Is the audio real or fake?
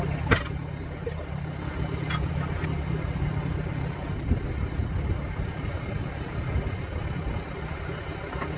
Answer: real